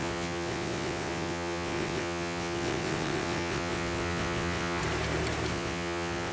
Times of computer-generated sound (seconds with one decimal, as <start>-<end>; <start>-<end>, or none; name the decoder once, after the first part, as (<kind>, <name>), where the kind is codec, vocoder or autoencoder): 0.0-4.8 (vocoder, WaveNeXt); 5.5-6.3